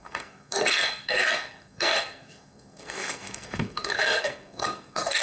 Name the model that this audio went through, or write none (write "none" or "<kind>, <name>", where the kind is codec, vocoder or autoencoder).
codec, SNAC